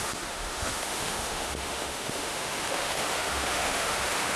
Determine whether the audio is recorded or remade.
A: remade